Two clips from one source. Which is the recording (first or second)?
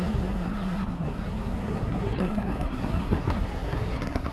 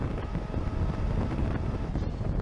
second